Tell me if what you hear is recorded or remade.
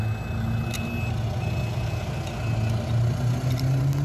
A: recorded